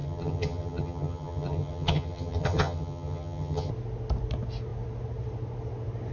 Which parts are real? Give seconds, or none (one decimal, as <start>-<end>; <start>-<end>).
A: 3.7-6.1